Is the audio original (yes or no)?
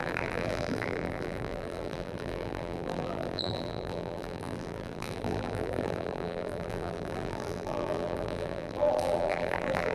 no